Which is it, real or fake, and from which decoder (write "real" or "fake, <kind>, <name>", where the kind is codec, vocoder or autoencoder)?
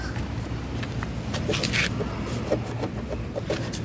real